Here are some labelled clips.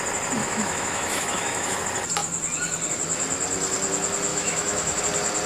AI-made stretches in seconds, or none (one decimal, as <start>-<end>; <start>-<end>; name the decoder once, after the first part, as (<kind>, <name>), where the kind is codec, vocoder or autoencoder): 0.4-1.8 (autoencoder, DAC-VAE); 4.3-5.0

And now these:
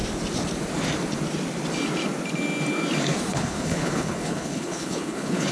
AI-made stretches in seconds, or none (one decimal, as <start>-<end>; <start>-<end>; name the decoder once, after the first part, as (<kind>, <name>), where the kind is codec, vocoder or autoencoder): 3.3-5.5 (codec, HILCodec)

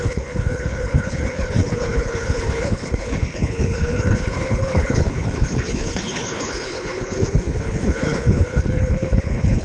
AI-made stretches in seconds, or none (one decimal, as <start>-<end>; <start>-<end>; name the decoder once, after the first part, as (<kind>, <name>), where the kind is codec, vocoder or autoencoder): 0.0-9.6 (codec, HILCodec)